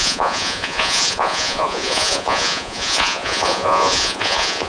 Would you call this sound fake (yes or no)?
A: yes